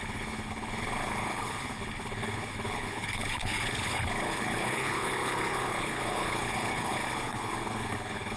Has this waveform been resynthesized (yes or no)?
yes